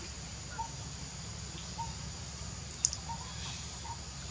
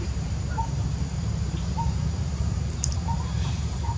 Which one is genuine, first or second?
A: first